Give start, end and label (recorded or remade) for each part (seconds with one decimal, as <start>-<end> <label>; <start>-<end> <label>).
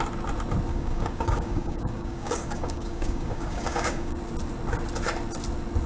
0.0-0.7 recorded; 0.7-4.2 remade; 4.2-5.9 recorded